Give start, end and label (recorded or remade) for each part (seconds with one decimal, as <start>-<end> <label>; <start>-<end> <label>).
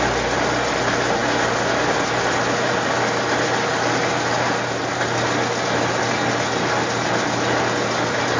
0.0-8.4 recorded